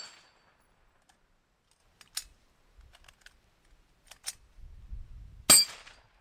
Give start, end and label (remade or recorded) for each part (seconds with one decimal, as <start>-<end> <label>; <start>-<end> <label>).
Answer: 0.0-6.2 recorded